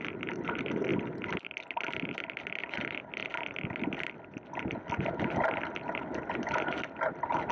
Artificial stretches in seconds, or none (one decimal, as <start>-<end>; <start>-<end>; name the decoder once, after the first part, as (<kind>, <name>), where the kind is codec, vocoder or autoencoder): 0.0-3.2 (vocoder, BigVGAN v2); 4.9-7.5